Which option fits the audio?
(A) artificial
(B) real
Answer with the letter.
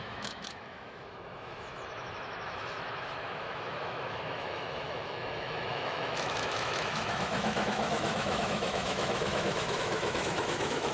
A